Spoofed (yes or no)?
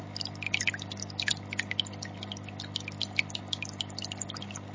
no